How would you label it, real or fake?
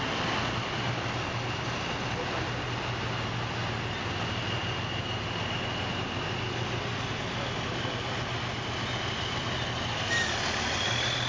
real